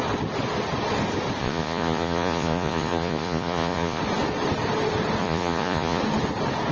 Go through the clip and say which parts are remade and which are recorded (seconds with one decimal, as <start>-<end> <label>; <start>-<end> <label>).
0.0-1.4 recorded; 1.4-4.0 remade; 4.0-5.2 recorded; 5.2-6.0 remade; 6.0-6.7 recorded